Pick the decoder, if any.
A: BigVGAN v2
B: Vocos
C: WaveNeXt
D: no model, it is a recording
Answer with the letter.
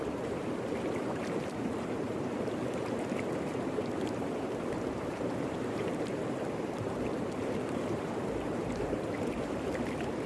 A